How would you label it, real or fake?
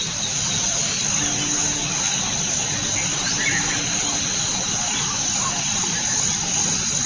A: real